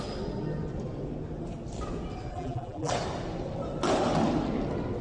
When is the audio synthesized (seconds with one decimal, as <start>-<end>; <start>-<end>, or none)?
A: 2.3-2.9